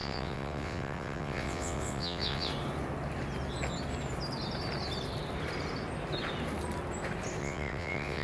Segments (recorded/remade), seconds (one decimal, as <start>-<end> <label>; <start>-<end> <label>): 0.0-2.5 remade; 2.5-7.4 recorded; 7.4-8.2 remade